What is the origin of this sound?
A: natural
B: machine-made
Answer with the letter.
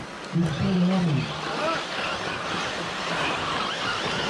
A